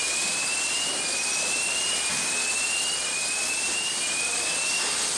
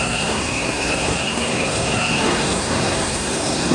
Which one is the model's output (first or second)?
second